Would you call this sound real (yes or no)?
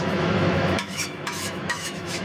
no